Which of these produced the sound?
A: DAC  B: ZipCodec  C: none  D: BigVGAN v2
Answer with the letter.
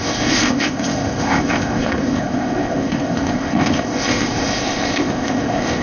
B